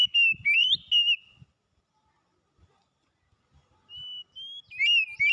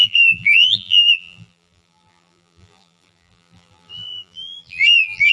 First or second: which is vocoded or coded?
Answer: second